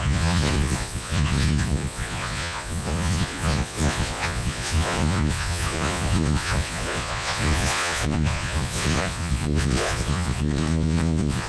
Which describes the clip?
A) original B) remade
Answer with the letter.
B